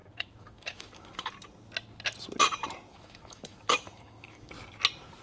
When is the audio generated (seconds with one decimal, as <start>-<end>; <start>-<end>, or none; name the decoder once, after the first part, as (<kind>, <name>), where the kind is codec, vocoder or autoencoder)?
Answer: 0.0-1.3 (autoencoder, DAC-VAE); 2.9-4.5